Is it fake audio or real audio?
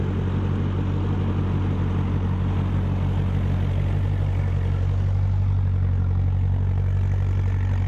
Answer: real